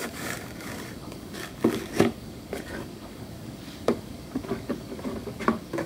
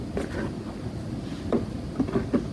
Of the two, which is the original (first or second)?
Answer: second